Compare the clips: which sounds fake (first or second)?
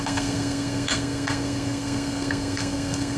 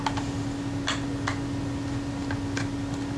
first